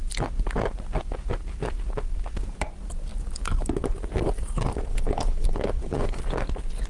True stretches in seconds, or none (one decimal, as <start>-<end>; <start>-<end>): 0.0-4.9; 6.2-6.9